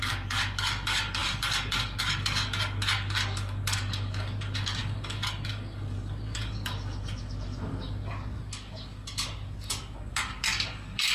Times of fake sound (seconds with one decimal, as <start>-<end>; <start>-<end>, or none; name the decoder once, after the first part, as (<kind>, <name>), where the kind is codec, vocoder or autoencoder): 0.0-11.1 (codec, DAC)